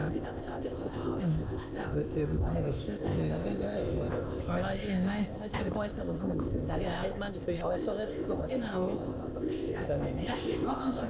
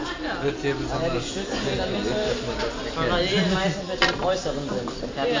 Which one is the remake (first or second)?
first